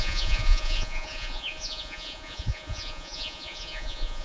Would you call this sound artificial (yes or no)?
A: yes